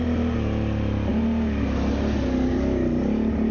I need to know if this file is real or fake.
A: real